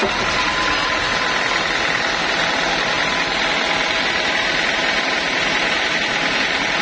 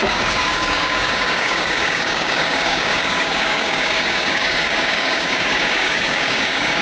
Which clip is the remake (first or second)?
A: second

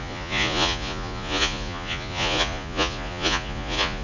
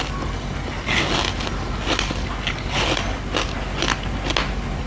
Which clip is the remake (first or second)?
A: first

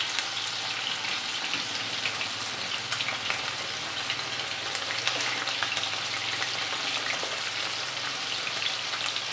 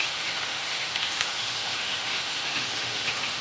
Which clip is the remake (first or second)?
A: second